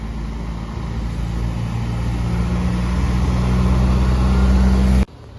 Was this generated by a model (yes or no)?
no